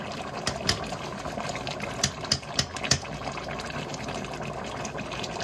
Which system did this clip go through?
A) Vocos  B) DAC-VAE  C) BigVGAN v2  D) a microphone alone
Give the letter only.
D